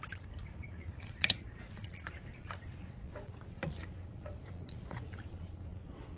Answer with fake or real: fake